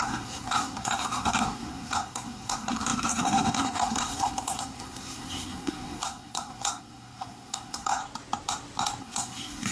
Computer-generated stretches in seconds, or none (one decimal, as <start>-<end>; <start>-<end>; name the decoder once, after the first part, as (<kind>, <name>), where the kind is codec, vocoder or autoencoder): 0.0-8.0 (codec, SNAC); 9.0-9.7